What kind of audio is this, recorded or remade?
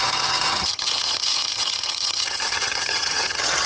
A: remade